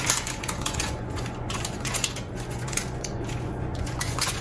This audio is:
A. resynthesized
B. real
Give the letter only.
A